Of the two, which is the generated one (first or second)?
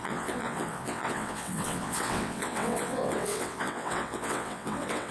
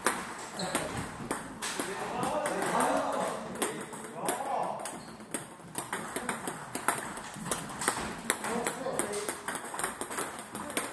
first